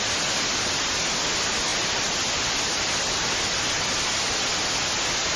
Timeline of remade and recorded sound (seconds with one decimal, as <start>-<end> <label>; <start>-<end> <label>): 0.0-5.4 recorded